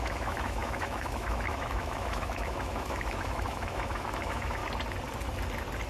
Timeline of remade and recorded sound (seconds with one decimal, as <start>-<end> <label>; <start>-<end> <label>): 0.0-4.6 remade; 4.6-5.9 recorded